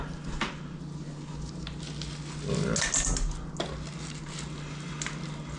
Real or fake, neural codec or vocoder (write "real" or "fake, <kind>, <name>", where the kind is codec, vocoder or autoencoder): real